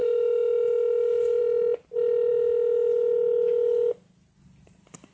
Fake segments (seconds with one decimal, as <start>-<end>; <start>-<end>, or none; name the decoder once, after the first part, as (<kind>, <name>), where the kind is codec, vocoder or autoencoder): 0.0-1.4 (autoencoder, DAC-VAE); 2.3-2.9